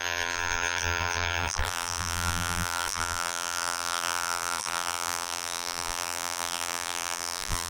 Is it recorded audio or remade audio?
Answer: remade